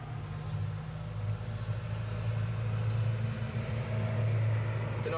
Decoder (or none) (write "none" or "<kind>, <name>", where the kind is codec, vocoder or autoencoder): none